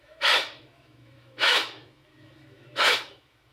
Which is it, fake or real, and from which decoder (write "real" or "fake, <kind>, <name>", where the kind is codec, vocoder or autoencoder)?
fake, autoencoder, DAC-VAE